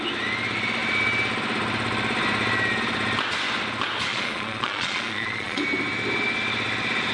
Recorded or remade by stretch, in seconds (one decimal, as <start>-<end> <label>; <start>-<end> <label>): 0.0-4.1 recorded; 4.1-5.6 remade; 5.6-7.1 recorded